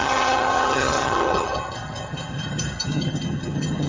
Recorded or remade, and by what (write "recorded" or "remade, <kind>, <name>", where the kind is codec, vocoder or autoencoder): remade, vocoder, HiFi-GAN